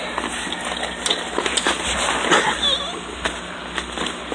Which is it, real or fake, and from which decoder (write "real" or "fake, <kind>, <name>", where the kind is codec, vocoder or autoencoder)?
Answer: real